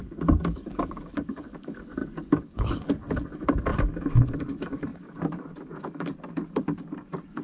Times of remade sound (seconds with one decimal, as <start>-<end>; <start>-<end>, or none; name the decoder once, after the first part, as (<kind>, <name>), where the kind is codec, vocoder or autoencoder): 0.0-7.4 (codec, DAC)